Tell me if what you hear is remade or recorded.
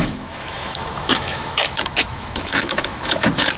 remade